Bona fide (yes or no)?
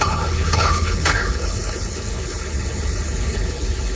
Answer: no